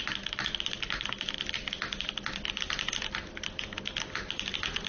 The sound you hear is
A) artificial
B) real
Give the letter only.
B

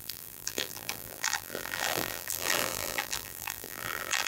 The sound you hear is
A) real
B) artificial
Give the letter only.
B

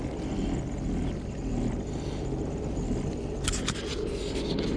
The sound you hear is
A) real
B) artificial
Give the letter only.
A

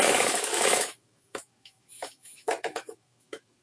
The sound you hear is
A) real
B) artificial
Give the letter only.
B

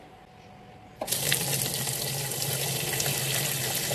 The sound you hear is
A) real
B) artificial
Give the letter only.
A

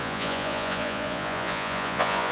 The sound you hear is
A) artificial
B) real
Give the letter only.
A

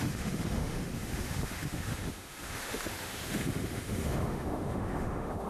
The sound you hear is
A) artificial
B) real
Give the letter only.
A